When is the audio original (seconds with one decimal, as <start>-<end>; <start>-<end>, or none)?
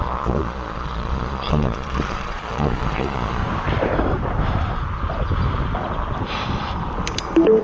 3.4-7.6